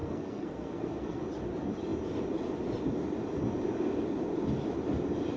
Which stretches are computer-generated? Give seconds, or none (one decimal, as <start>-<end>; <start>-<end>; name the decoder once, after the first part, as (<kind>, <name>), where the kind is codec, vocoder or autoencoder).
0.0-1.2 (codec, SNAC)